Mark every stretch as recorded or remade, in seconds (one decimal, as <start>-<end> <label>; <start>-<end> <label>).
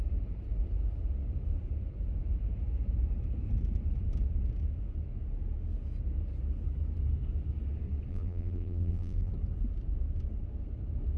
0.0-8.1 recorded; 8.1-9.3 remade; 9.3-11.2 recorded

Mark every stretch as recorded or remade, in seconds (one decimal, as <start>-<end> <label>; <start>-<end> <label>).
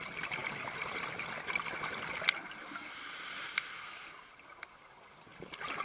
0.0-5.8 recorded